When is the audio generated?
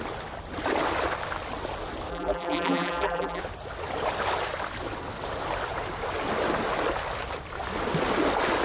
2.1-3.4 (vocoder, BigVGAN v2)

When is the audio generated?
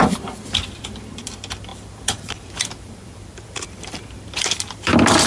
0.0-5.3 (vocoder, BigVGAN v2)